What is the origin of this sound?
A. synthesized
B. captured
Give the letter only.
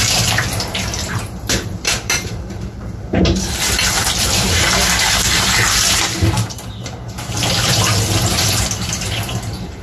A